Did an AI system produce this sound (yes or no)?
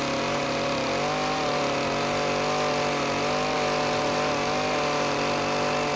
no